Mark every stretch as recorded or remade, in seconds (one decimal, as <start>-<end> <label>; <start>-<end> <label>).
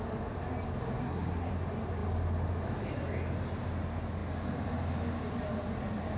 0.0-1.0 recorded; 1.0-1.5 remade; 1.5-6.2 recorded